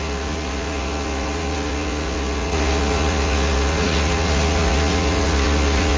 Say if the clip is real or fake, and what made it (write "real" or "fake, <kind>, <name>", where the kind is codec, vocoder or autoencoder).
fake, vocoder, Vocos